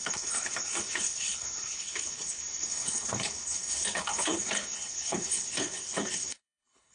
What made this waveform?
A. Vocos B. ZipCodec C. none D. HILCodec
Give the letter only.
D